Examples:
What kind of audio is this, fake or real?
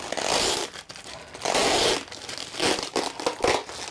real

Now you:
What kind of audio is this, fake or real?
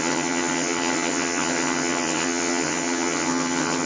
fake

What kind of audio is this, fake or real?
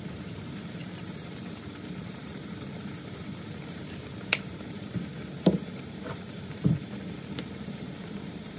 fake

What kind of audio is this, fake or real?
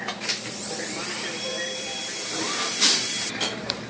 fake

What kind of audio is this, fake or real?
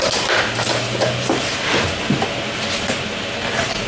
real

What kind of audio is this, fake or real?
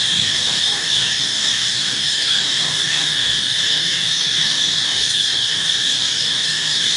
fake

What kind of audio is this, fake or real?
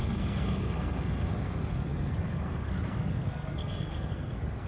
fake